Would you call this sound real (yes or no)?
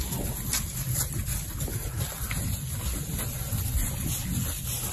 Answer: yes